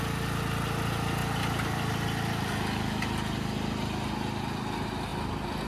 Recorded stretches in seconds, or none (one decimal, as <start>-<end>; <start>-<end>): 0.0-1.2; 1.9-5.7